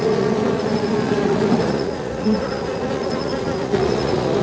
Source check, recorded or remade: remade